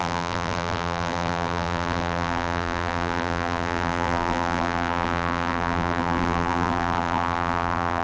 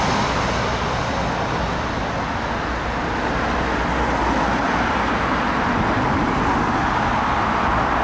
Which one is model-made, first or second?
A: first